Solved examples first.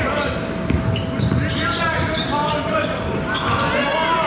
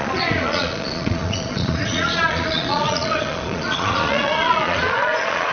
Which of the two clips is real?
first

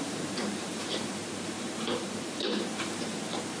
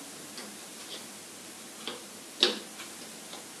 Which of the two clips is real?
second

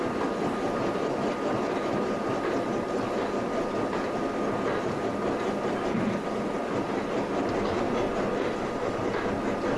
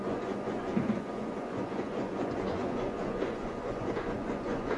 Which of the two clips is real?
first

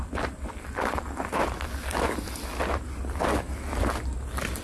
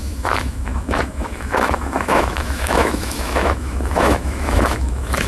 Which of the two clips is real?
first